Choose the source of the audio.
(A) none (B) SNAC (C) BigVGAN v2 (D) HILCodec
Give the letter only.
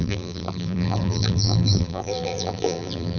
C